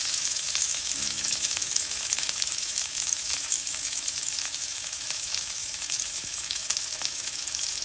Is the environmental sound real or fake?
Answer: fake